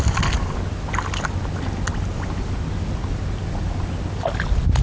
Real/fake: real